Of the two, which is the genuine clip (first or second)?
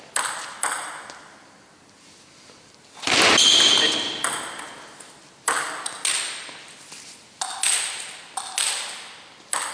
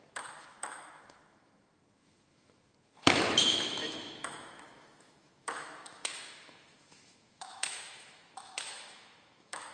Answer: first